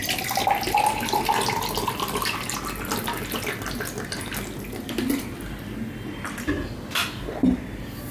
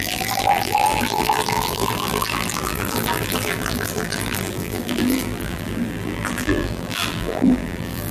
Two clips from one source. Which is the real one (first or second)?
first